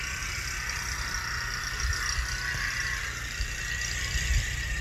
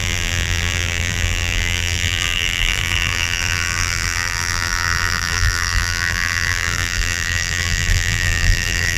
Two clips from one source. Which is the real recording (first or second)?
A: first